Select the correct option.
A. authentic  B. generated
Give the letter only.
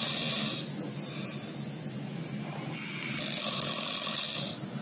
A